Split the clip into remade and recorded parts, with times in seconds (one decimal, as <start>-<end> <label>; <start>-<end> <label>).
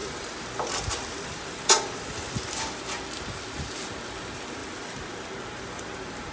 0.0-2.8 remade; 2.8-4.6 recorded; 4.6-6.3 remade